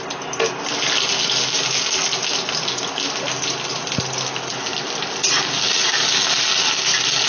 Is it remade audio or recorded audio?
recorded